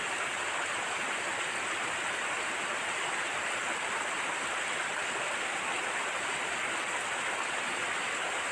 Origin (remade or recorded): recorded